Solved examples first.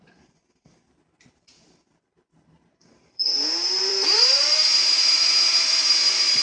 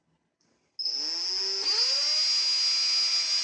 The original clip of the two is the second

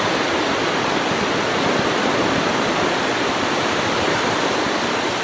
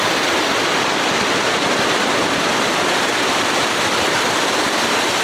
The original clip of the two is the second